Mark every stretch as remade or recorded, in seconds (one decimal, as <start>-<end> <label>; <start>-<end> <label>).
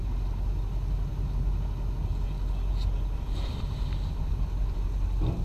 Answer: 0.0-5.4 recorded